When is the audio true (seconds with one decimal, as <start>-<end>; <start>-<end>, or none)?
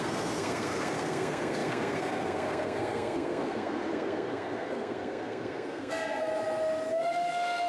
6.3-6.9